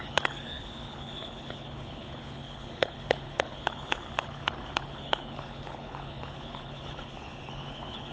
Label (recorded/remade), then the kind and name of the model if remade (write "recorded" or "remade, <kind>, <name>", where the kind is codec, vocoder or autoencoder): remade, codec, HILCodec